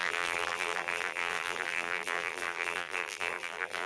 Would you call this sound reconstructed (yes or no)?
yes